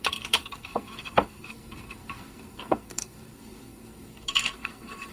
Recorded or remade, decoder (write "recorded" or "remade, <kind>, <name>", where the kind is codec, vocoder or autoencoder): remade, codec, SNAC